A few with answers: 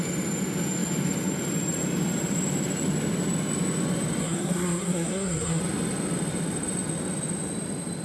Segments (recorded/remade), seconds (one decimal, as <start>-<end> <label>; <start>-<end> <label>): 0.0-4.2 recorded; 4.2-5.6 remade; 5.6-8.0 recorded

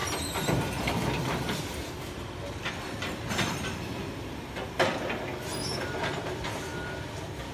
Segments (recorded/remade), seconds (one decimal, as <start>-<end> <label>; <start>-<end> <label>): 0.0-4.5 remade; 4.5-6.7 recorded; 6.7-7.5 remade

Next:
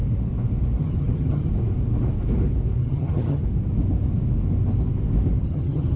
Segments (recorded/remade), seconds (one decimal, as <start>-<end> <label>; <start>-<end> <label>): 0.0-0.8 recorded; 0.8-1.5 remade; 1.5-2.8 recorded; 2.8-3.4 remade; 3.4-5.4 recorded; 5.4-6.0 remade

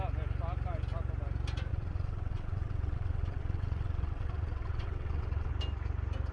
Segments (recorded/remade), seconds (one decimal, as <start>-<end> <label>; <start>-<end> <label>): 0.0-1.7 recorded; 1.7-5.5 remade; 5.5-6.3 recorded